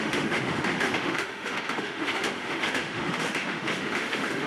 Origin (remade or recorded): remade